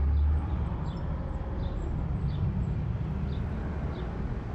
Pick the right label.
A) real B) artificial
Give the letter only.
A